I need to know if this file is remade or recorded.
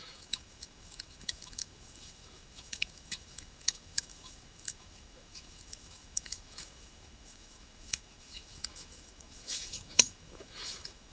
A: remade